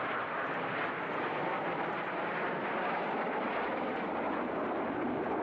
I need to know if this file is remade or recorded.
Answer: recorded